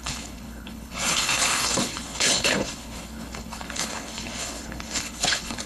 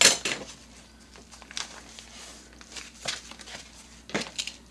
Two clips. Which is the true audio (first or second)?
second